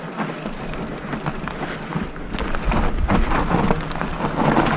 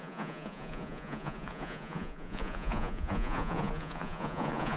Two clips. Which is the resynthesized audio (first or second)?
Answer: second